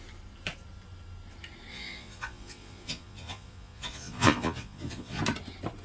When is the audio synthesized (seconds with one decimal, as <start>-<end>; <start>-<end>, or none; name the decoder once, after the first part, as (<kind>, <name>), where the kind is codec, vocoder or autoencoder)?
1.7-5.2 (vocoder, Vocos)